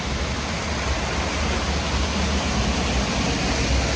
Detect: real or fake real